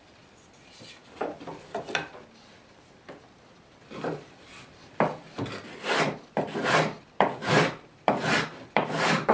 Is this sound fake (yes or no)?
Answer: yes